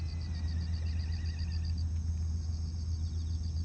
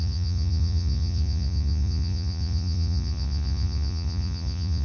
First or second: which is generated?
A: second